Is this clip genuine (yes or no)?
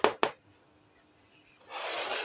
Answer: yes